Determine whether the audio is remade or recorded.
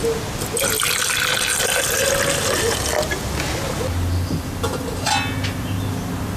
recorded